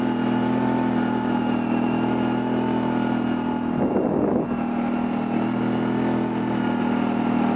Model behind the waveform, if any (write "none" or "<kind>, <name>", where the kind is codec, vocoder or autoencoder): none